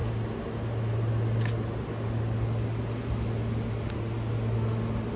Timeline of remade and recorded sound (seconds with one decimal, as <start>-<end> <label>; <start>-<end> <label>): 0.0-5.2 recorded